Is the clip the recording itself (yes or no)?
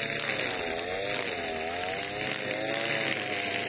yes